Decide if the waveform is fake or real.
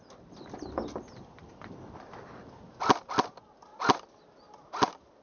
real